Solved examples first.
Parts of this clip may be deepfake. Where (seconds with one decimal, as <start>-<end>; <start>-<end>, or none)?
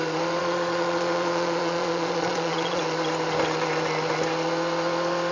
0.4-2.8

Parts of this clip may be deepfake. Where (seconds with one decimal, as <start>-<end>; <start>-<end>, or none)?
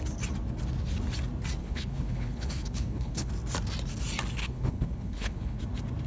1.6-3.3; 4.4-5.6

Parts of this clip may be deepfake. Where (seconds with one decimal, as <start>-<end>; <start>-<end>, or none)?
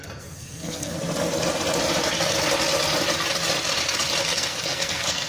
0.0-1.0; 4.2-5.3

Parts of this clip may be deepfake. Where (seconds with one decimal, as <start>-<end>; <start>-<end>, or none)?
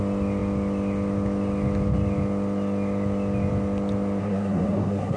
4.2-5.2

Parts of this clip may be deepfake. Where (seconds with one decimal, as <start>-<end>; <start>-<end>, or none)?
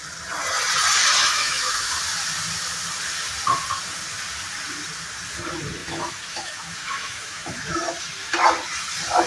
1.3-1.9; 5.8-7.5